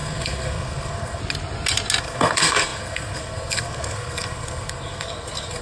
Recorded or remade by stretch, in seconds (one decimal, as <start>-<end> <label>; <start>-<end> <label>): 0.0-1.2 remade; 1.2-2.0 recorded; 2.0-5.6 remade